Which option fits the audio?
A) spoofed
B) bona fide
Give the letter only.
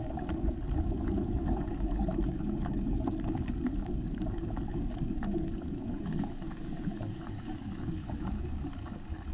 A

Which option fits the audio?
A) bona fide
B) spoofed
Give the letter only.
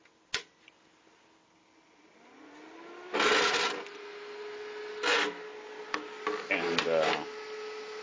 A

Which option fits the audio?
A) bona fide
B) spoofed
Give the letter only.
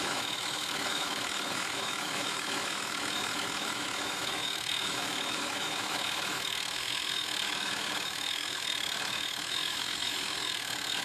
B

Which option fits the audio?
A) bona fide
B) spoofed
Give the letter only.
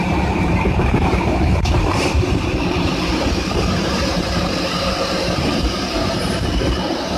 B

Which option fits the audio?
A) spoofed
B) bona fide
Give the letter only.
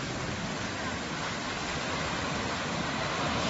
B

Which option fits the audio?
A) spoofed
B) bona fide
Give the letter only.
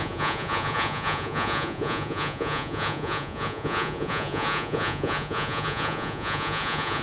A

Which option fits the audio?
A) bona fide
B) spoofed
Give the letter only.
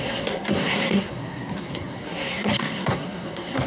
B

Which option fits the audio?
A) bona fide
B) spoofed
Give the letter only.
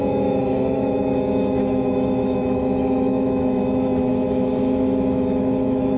B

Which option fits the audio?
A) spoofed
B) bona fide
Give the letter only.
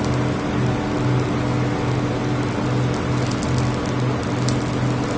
B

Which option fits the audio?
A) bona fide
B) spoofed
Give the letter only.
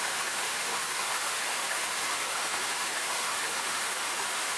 B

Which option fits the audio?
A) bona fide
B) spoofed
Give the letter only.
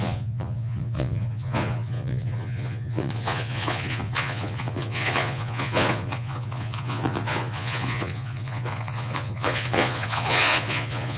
B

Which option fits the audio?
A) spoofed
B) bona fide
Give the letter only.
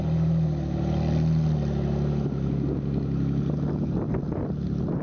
B